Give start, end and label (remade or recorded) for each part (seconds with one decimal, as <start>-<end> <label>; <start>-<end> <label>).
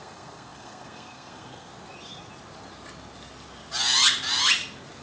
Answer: 0.0-1.7 remade; 1.7-5.0 recorded